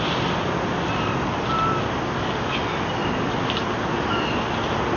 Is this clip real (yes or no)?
yes